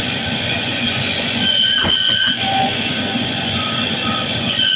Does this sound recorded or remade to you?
remade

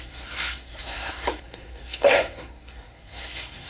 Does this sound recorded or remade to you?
remade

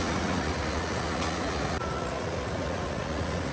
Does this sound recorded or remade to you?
remade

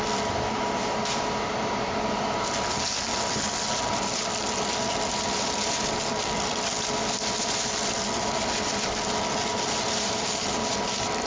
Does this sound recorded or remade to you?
recorded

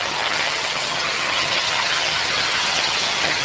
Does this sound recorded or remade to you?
remade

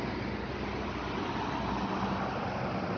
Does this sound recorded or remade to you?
recorded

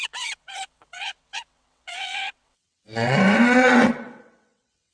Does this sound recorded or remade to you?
remade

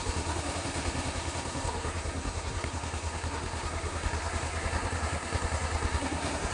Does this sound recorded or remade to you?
remade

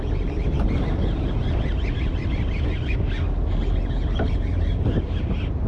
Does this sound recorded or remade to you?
recorded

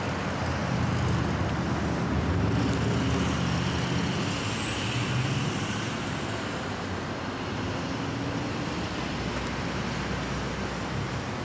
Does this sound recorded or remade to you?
recorded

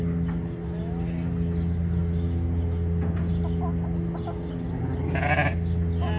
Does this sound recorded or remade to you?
recorded